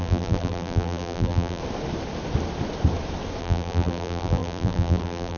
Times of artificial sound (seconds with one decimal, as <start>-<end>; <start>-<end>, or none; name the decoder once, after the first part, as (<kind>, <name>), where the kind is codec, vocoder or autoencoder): 0.0-1.6 (vocoder, BigVGAN v2); 3.4-5.4